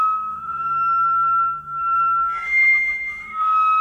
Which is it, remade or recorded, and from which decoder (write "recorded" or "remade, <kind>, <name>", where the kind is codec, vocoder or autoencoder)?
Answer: remade, autoencoder, DAC-VAE